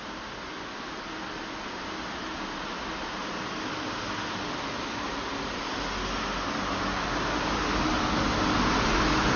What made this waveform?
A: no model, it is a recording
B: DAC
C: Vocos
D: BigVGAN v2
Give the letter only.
A